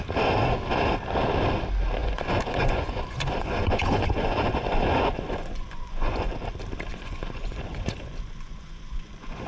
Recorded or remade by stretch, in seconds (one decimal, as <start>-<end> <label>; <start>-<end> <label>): 0.0-2.0 recorded; 2.0-6.3 remade; 6.3-6.9 recorded; 6.9-9.5 remade